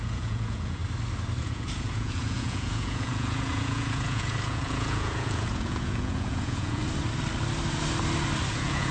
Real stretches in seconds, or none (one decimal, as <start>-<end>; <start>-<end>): 0.8-1.4; 6.8-8.5